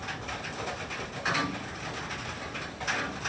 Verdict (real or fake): real